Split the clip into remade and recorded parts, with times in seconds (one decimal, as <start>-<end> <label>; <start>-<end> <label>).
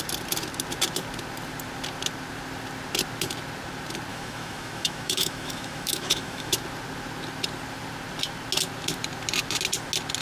0.0-4.1 recorded; 4.1-6.6 remade; 6.6-10.2 recorded